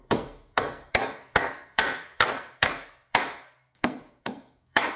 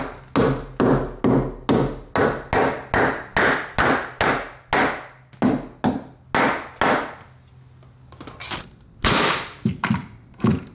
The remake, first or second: first